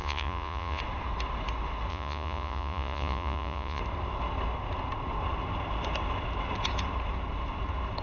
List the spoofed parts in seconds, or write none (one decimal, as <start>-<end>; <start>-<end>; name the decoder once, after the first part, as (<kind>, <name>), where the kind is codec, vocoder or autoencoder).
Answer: 0.0-0.8 (vocoder, Vocos); 1.9-3.8